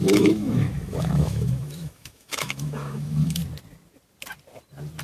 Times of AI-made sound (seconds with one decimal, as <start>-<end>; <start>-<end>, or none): 0.0-3.4